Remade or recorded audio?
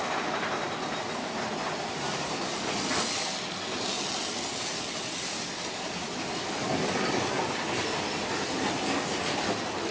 recorded